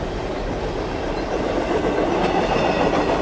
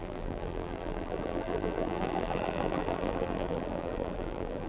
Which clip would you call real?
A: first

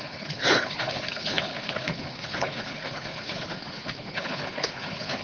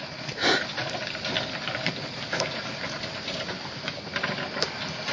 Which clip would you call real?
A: second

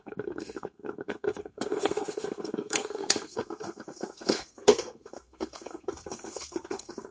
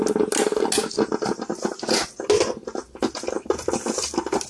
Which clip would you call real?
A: second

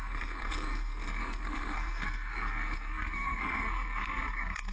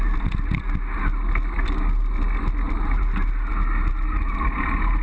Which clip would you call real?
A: second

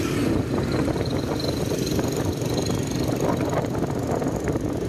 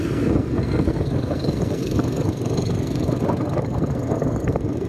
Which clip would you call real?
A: first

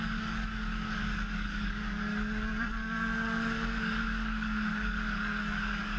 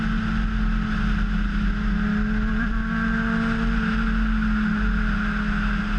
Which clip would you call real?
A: second